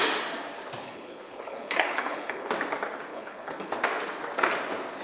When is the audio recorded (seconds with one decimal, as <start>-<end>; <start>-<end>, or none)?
0.0-0.8; 2.5-3.1; 3.7-5.0